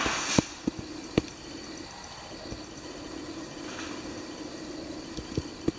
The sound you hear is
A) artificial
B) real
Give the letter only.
B